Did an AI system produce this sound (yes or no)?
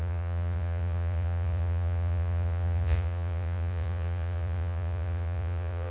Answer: yes